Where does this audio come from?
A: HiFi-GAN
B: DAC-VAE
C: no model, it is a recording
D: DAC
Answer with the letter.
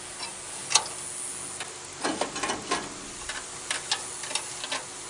C